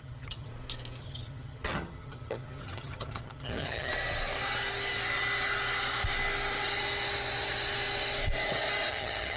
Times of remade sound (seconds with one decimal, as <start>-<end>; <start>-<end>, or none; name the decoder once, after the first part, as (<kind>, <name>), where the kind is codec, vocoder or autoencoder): 0.0-0.5 (vocoder, HiFi-GAN); 1.0-3.9; 8.9-9.4

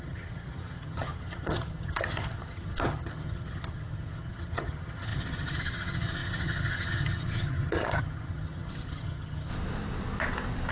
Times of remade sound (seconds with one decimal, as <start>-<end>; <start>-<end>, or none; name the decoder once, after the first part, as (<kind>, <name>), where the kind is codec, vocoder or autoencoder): 0.0-9.5 (vocoder, HiFi-GAN)